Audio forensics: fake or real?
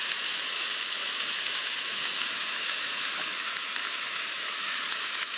fake